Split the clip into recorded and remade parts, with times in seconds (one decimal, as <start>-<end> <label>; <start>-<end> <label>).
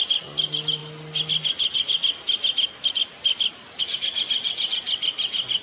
0.0-5.6 recorded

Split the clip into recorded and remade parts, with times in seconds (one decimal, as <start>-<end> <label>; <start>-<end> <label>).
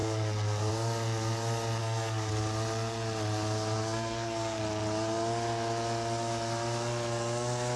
0.0-0.7 remade; 0.7-1.8 recorded; 1.8-2.3 remade; 2.3-3.8 recorded; 3.8-4.6 remade; 4.6-7.8 recorded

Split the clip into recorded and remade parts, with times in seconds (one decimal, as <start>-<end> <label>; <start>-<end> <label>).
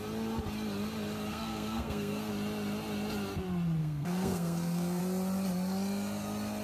0.0-1.3 recorded; 1.3-2.3 remade; 2.3-3.8 recorded; 3.8-5.0 remade; 5.0-6.6 recorded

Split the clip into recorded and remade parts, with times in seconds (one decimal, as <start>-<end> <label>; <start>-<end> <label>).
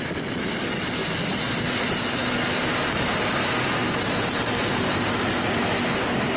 0.0-6.4 recorded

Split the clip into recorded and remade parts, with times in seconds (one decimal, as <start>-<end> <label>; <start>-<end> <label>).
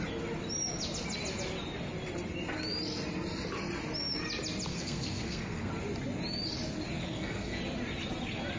0.0-4.7 recorded; 4.7-5.7 remade; 5.7-7.0 recorded; 7.0-7.6 remade; 7.6-8.6 recorded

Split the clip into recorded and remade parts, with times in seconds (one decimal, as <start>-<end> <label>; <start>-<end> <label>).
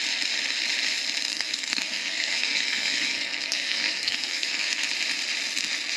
0.0-1.3 recorded; 1.3-4.9 remade; 4.9-6.0 recorded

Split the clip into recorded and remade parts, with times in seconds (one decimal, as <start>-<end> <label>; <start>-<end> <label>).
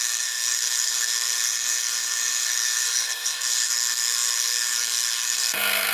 0.0-5.9 remade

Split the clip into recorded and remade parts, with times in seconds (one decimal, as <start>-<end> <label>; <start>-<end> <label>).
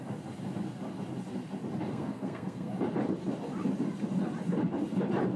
0.0-1.9 recorded; 1.9-2.7 remade; 2.7-5.4 recorded